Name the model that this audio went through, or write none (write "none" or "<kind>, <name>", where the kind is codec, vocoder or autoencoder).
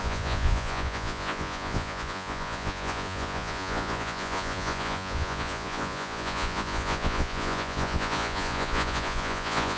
vocoder, Vocos